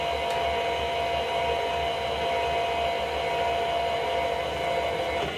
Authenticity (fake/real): real